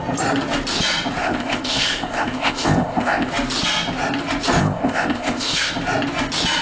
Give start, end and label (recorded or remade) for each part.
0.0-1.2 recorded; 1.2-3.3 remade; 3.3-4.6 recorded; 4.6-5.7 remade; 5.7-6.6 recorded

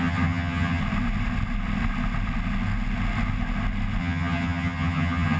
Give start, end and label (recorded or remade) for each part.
0.0-0.8 remade; 0.8-4.0 recorded; 4.0-5.4 remade

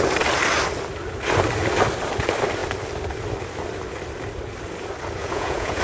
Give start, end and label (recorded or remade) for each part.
0.0-5.2 recorded; 5.2-5.8 remade

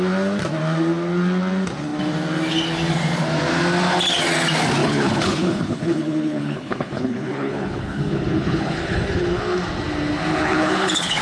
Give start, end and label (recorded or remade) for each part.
0.0-4.8 recorded; 4.8-9.4 remade; 9.4-10.3 recorded; 10.3-11.2 remade